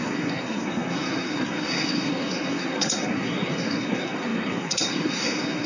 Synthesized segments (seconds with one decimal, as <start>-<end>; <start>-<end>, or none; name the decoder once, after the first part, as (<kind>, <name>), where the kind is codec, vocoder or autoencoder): 0.0-5.7 (codec, SNAC)